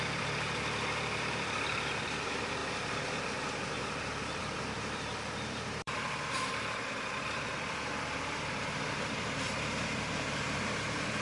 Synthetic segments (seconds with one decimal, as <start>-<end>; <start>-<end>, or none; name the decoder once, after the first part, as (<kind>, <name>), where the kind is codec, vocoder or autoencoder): 0.0-11.2 (vocoder, BigVGAN v2)